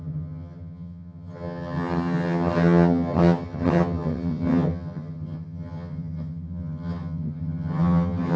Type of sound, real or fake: fake